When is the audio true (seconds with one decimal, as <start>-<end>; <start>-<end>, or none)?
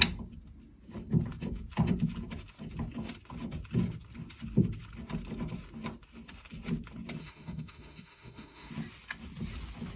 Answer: 0.0-7.2; 8.7-10.0